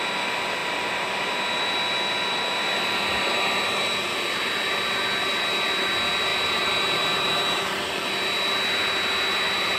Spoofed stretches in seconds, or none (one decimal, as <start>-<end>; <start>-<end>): 6.3-7.8

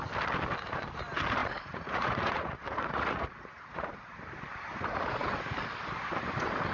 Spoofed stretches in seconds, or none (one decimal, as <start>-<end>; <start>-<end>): 1.4-4.2; 4.7-5.4

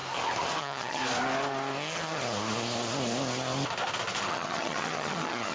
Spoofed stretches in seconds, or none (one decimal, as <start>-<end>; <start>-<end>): 0.6-1.0; 4.3-5.5

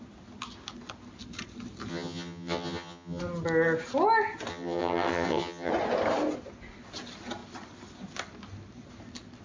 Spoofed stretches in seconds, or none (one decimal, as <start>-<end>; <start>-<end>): 1.9-3.2; 4.5-5.7